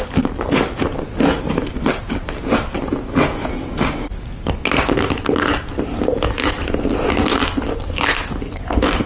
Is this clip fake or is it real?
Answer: real